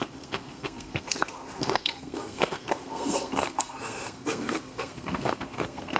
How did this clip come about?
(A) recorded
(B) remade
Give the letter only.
B